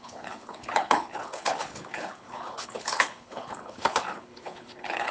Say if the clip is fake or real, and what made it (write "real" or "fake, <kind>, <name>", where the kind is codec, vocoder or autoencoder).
fake, codec, HILCodec